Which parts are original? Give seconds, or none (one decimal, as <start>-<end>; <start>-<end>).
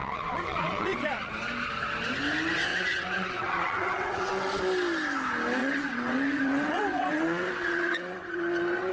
1.3-2.7; 4.6-5.6